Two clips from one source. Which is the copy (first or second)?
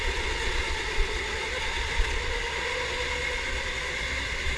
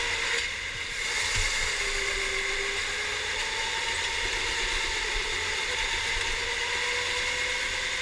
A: first